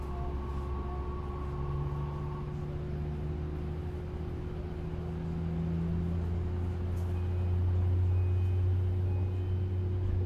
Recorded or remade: recorded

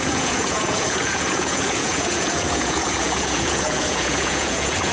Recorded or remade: remade